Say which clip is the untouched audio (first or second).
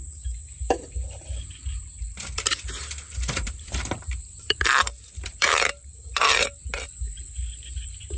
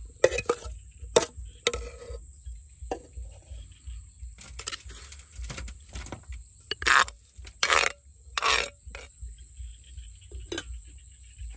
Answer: second